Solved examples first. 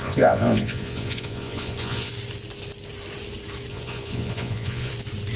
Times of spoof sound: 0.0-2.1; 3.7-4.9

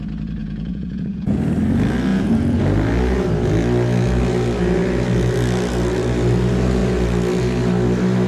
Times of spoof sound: 0.4-1.4; 2.1-2.6

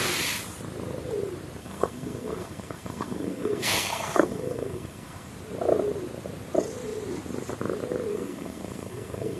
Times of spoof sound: 1.6-5.3; 8.1-9.4

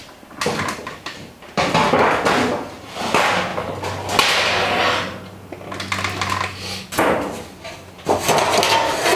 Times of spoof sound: none

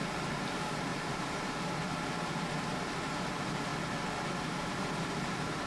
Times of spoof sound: 0.0-3.7; 4.4-5.7

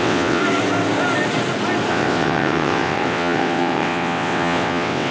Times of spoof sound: 0.0-0.4; 1.9-5.1